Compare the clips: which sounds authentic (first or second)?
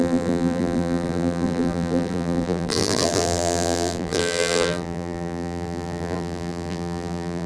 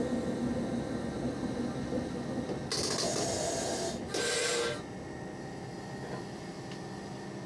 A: second